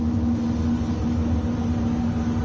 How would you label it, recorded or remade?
recorded